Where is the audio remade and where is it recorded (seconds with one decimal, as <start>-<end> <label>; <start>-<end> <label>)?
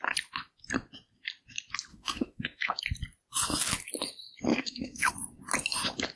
0.0-1.9 recorded; 1.9-2.8 remade; 2.8-4.5 recorded; 4.5-5.1 remade; 5.1-6.2 recorded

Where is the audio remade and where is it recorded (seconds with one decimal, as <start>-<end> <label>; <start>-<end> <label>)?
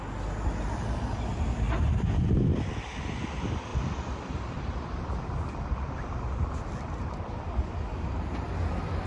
0.0-1.3 recorded; 1.3-2.7 remade; 2.7-3.7 recorded; 3.7-5.1 remade; 5.1-9.1 recorded